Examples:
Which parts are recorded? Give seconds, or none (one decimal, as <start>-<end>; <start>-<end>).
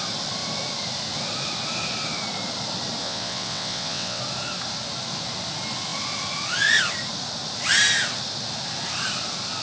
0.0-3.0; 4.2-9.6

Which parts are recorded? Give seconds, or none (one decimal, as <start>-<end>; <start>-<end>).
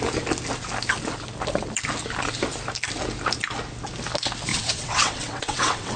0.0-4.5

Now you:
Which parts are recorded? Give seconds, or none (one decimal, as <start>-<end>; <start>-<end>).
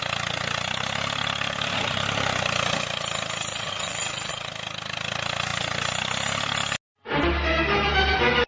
0.0-3.5; 4.5-8.5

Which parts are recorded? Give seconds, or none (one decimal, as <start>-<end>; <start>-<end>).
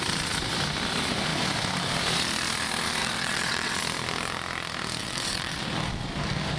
0.0-3.0; 3.8-5.0; 5.6-6.6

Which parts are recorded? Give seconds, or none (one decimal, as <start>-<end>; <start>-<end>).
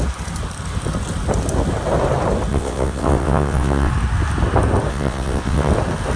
0.0-2.5; 3.9-4.9; 5.7-6.2